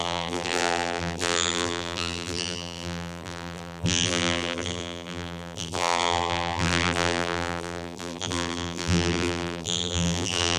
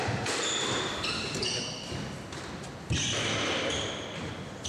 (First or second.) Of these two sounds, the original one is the second